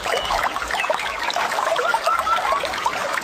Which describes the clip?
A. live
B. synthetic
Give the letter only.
B